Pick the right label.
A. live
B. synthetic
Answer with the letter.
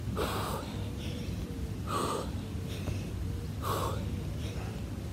A